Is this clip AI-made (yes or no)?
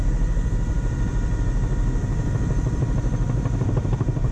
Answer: yes